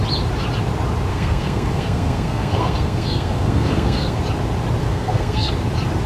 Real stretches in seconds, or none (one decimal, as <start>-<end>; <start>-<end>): 0.0-1.1; 4.2-4.8; 5.5-6.1